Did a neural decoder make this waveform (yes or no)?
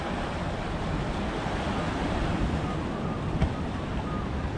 no